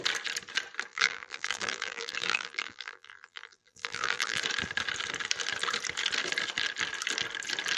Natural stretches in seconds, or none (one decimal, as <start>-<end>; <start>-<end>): 0.0-0.9; 4.4-7.8